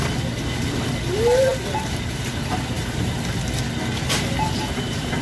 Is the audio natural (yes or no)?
yes